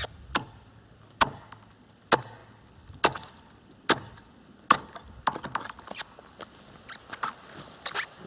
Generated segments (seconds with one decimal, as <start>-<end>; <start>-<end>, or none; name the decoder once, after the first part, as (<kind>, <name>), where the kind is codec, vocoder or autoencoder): none